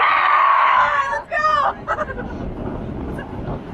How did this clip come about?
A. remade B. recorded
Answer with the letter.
B